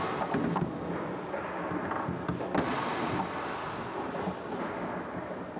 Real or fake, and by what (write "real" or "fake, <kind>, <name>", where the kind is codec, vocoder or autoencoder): real